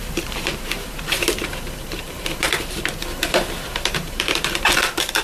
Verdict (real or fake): fake